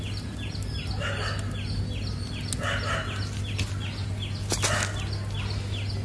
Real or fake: real